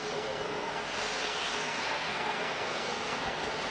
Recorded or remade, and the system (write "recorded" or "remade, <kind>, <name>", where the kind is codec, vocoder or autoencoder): remade, codec, SNAC